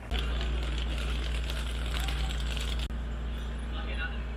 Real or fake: real